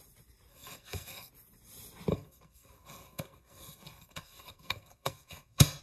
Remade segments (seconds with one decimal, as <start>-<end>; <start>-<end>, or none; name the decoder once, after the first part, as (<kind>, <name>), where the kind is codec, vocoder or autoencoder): 0.5-1.3 (codec, SNAC); 2.1-5.8